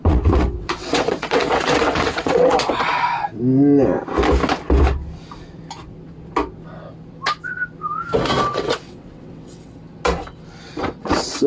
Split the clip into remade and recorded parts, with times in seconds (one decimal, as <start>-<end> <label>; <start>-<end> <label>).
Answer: 0.0-2.9 remade; 2.9-8.5 recorded; 8.5-9.8 remade; 9.8-10.8 recorded; 10.8-11.5 remade